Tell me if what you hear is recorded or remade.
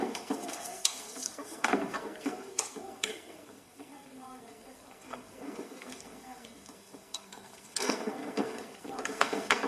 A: remade